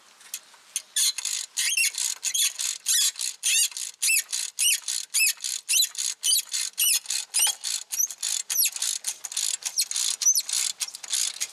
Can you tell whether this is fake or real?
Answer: real